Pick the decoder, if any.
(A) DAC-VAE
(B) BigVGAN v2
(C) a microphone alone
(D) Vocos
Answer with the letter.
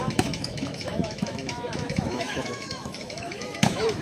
A